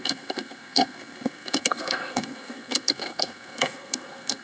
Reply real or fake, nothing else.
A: fake